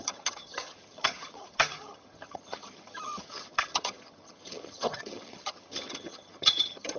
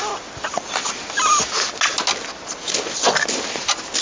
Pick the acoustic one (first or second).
second